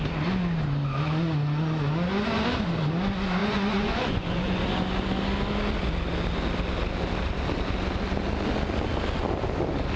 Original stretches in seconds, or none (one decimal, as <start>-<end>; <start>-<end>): 0.0-3.4; 4.6-10.0